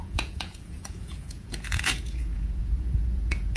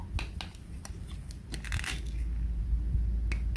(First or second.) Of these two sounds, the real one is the second